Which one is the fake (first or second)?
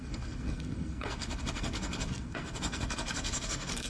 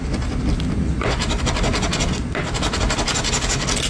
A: first